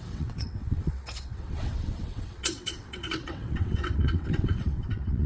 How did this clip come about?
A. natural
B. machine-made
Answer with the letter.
B